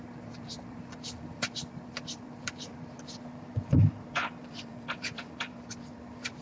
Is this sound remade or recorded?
remade